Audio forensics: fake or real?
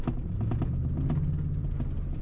real